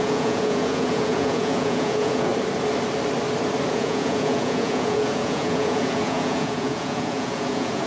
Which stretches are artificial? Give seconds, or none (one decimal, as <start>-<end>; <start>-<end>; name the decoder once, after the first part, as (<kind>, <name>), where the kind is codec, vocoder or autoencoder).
0.0-2.3 (vocoder, Vocos); 3.7-7.9

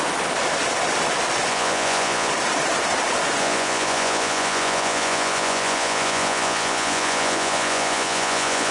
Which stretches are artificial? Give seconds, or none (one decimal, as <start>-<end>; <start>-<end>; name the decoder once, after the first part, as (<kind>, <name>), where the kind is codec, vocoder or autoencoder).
1.5-2.3 (vocoder, Vocos); 3.4-8.7

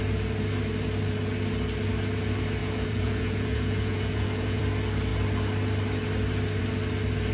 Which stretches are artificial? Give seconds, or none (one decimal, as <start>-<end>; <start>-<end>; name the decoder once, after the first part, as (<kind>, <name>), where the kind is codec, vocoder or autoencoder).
2.6-4.6 (vocoder, Vocos)